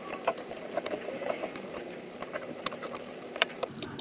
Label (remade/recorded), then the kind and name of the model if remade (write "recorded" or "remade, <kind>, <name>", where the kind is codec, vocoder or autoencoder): remade, vocoder, BigVGAN v2